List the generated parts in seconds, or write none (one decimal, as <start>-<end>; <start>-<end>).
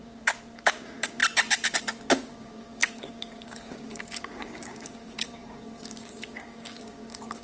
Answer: 0.0-1.2; 2.1-7.4